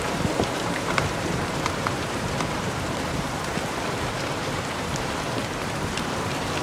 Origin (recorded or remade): remade